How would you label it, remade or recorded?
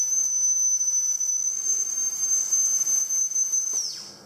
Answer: recorded